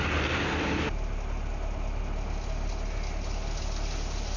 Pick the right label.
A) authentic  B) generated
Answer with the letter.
A